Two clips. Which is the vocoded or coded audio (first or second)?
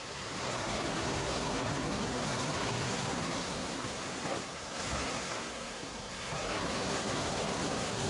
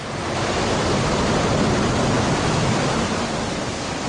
first